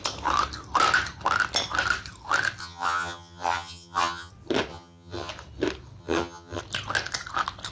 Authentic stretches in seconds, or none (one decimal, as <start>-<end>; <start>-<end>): 0.0-2.6; 4.3-4.7; 5.3-6.0; 6.6-7.7